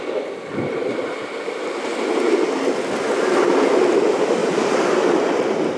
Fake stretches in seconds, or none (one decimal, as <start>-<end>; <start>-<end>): 4.4-5.8